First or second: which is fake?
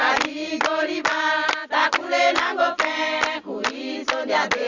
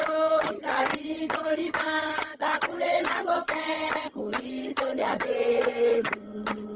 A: second